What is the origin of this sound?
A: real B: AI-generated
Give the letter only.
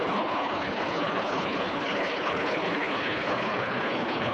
B